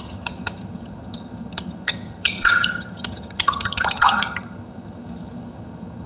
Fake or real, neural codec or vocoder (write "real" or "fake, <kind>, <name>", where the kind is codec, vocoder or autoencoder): fake, vocoder, HiFi-GAN